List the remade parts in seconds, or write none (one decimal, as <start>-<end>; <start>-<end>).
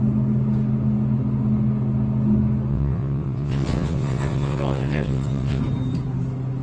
2.7-5.6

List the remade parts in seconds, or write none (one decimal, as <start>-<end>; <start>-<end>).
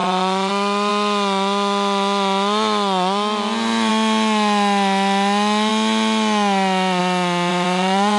0.0-0.5; 7.5-8.2